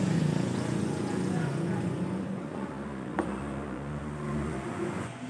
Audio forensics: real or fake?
fake